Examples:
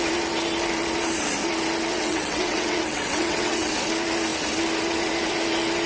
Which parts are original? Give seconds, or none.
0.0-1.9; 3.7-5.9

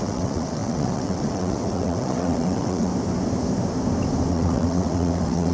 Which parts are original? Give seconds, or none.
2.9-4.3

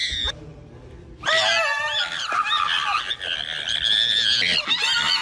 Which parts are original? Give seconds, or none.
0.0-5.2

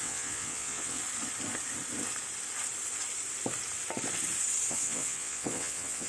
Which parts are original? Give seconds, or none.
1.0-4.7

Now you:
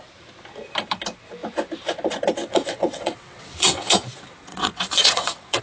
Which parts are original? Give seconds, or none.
0.0-2.5; 3.9-4.5